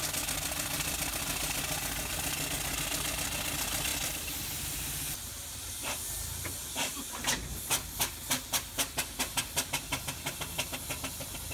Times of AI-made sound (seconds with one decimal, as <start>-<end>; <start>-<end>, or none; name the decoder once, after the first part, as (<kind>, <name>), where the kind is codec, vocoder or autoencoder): none